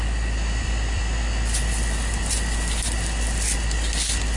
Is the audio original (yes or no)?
yes